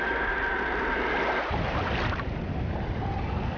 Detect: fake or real real